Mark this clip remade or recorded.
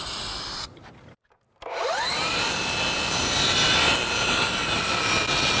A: recorded